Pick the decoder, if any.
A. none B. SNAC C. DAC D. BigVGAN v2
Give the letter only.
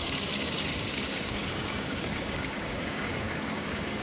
C